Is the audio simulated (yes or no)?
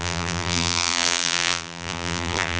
yes